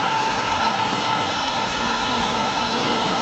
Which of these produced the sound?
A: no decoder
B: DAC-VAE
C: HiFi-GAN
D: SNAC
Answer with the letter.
D